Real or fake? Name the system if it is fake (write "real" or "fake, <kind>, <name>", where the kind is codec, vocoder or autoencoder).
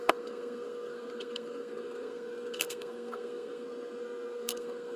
fake, codec, SNAC